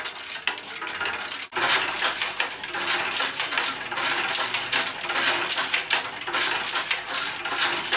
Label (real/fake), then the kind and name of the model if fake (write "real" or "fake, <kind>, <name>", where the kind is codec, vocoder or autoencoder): real